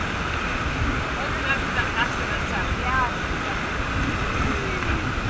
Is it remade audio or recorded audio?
recorded